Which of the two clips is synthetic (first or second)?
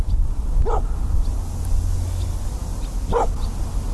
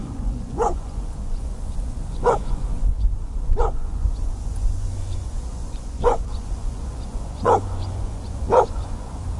second